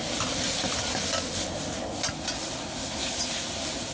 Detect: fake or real real